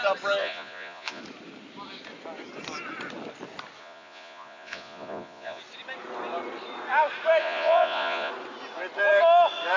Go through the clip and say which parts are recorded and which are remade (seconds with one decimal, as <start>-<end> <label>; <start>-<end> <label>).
0.0-0.4 recorded; 0.4-1.2 remade; 1.2-3.8 recorded; 3.8-5.6 remade; 5.6-7.4 recorded; 7.4-8.3 remade; 8.3-9.8 recorded

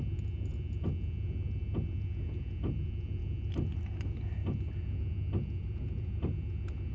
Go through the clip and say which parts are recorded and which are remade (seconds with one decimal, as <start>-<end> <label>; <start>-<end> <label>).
0.0-5.6 recorded; 5.6-6.2 remade; 6.2-6.9 recorded

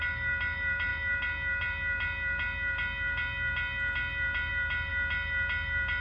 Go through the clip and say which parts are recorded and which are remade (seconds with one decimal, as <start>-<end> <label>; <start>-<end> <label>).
0.0-6.0 recorded

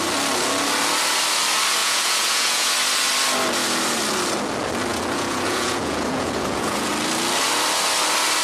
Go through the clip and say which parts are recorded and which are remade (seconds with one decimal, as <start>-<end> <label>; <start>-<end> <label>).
0.0-1.8 recorded; 1.8-2.7 remade; 2.7-4.9 recorded; 4.9-6.9 remade; 6.9-8.4 recorded